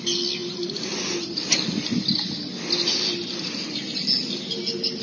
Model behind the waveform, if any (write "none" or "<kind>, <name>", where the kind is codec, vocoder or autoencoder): none